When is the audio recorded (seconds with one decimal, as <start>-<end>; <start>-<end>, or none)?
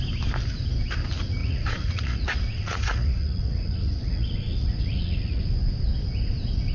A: 0.0-1.4; 5.4-6.7